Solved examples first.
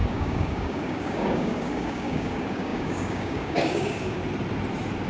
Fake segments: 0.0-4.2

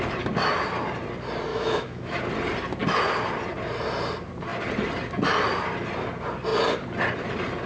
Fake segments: 1.5-2.2